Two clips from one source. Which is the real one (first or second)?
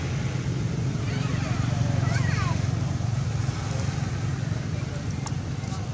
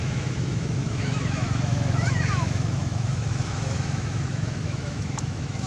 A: first